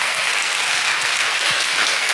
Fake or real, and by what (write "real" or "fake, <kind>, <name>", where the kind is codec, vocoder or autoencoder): fake, codec, SNAC